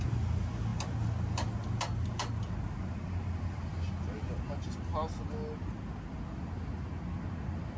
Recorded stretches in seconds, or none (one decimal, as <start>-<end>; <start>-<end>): 0.0-7.8